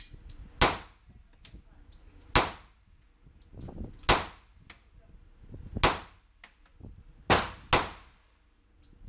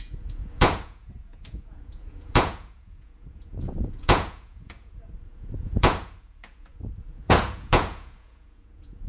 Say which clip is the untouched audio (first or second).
first